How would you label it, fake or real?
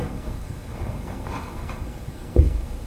fake